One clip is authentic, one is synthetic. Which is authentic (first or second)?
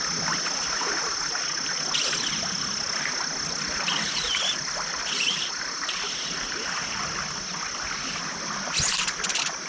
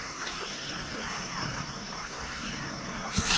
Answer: first